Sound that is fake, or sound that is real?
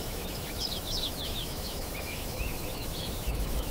fake